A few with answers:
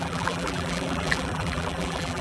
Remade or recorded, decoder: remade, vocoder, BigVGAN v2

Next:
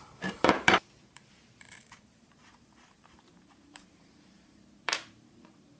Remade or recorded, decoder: remade, vocoder, BigVGAN v2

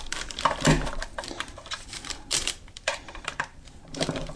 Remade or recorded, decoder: remade, vocoder, BigVGAN v2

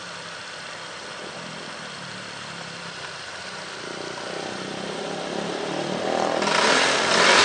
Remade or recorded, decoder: remade, vocoder, BigVGAN v2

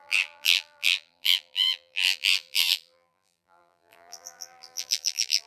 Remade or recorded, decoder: remade, vocoder, BigVGAN v2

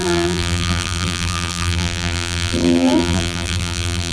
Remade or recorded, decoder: remade, vocoder, BigVGAN v2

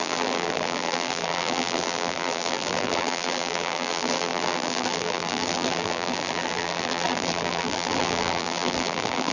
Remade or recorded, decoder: remade, vocoder, BigVGAN v2